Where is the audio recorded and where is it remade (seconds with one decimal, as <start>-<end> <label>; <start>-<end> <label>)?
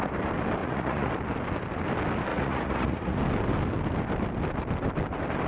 0.0-0.6 recorded; 0.6-1.1 remade; 1.1-2.3 recorded; 2.3-3.2 remade; 3.2-5.5 recorded